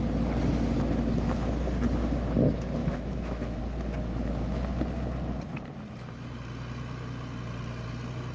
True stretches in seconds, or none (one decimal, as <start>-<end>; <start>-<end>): 0.0-2.8; 3.6-8.3